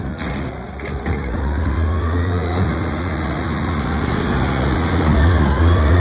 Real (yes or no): no